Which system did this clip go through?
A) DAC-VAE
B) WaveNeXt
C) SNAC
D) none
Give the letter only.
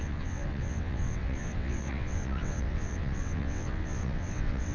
B